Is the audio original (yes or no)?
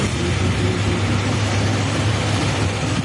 yes